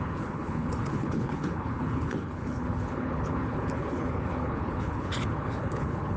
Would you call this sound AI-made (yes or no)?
yes